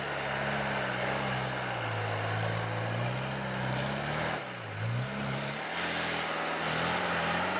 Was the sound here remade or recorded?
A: recorded